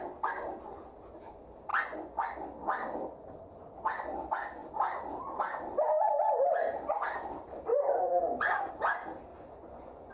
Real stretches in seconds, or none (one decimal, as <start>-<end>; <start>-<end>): 0.0-1.7; 2.3-7.7; 8.7-9.3